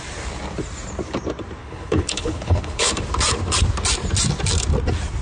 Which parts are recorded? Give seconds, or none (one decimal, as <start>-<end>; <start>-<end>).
0.0-1.6; 2.9-5.2